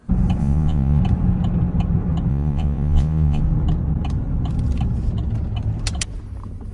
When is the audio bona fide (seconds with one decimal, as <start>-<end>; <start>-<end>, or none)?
0.0-0.4; 1.0-2.3; 3.4-6.7